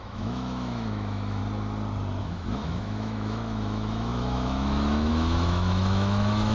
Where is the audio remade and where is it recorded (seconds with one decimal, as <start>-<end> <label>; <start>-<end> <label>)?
0.0-1.4 remade; 1.4-2.2 recorded; 2.2-6.5 remade